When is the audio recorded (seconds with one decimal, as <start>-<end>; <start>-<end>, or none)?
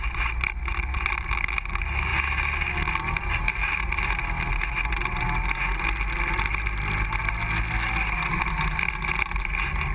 0.0-9.9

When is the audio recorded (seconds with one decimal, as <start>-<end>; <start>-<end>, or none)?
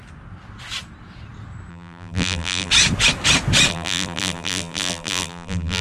0.0-1.7; 2.7-3.7